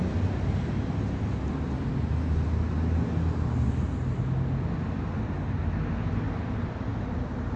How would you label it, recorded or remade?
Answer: recorded